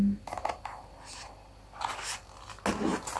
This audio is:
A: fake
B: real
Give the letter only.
B